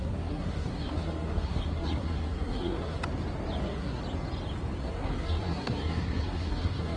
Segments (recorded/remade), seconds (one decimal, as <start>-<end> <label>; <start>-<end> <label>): 0.0-3.0 remade; 3.0-3.6 recorded; 3.6-4.0 remade; 4.0-4.8 recorded; 4.8-7.0 remade